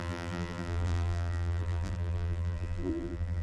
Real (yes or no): no